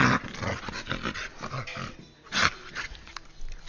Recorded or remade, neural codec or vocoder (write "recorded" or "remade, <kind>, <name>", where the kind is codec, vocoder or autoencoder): recorded